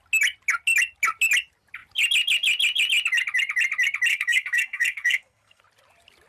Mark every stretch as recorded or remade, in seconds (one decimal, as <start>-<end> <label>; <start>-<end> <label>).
0.0-4.1 recorded; 4.1-5.6 remade; 5.6-6.3 recorded